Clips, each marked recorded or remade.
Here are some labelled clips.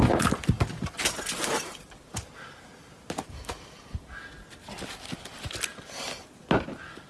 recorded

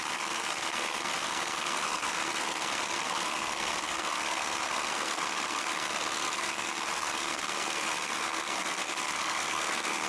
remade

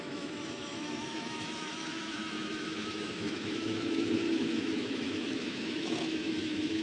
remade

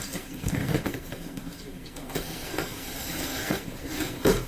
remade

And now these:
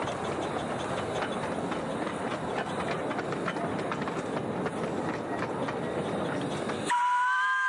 recorded